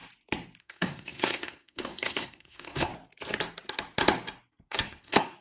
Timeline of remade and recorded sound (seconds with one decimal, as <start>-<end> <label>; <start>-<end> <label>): 0.0-0.6 recorded; 0.6-2.9 remade; 2.9-4.7 recorded; 4.7-5.4 remade